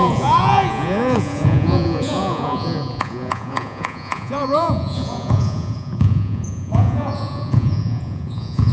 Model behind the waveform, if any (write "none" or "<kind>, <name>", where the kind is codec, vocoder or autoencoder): vocoder, Vocos